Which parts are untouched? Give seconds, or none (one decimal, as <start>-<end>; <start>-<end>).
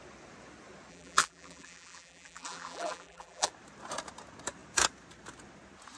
0.0-0.9; 3.5-6.0